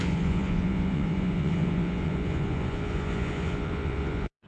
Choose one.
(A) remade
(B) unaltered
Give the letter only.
A